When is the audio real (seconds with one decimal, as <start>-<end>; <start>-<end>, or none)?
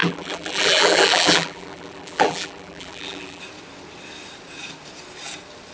3.4-5.7